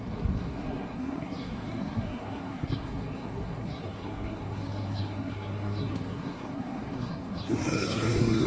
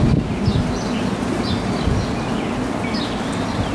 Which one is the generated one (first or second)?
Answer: first